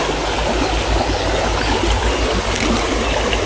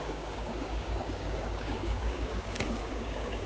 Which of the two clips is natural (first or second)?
first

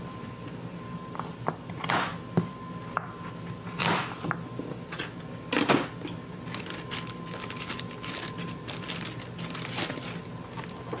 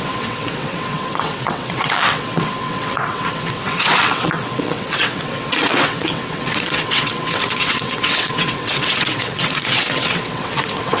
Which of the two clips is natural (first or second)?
first